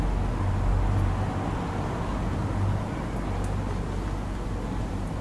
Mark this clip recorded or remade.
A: recorded